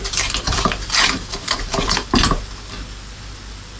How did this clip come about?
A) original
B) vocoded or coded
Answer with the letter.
A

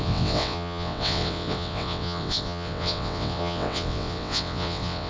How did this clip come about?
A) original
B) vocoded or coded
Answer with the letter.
B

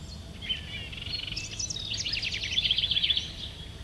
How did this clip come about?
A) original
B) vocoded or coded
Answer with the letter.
A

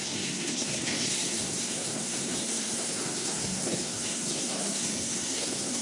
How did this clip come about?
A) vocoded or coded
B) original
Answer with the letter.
A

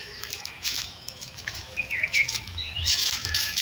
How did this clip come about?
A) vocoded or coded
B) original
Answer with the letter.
A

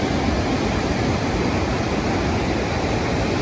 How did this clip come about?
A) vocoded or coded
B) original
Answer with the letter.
B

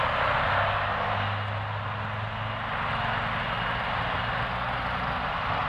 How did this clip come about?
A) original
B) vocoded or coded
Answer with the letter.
A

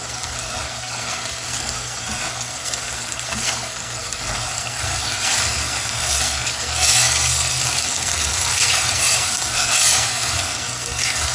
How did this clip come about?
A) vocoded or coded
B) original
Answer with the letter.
A